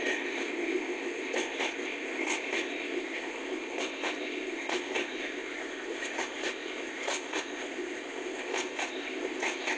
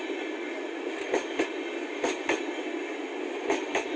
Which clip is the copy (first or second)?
first